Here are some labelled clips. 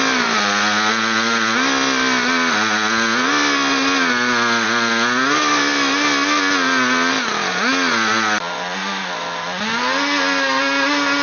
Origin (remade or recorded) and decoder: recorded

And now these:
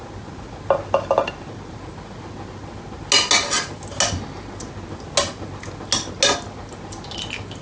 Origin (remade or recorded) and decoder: recorded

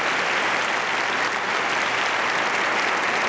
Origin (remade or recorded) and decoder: recorded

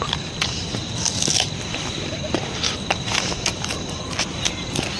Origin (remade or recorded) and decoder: recorded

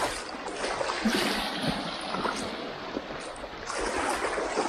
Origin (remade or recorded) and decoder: recorded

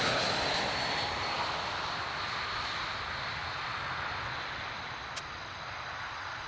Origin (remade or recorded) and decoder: recorded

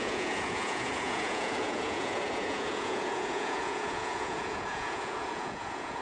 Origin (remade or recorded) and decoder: remade, vocoder, Vocos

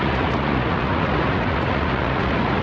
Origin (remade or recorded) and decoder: remade, vocoder, Vocos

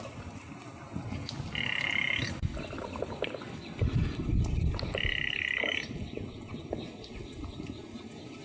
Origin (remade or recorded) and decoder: recorded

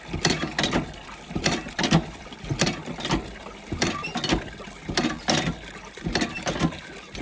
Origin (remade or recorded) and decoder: recorded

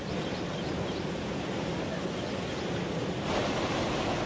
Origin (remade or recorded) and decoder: recorded